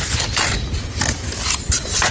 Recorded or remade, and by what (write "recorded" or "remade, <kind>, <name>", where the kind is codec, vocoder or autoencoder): recorded